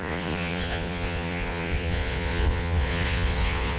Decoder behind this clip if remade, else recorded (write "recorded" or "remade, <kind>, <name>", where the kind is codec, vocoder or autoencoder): remade, vocoder, Vocos